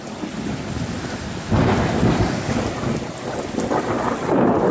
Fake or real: real